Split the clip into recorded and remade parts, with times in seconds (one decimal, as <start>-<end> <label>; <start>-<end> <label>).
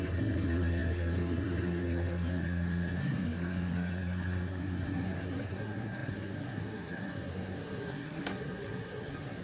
0.0-9.4 remade